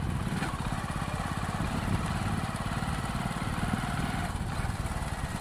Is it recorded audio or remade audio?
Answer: recorded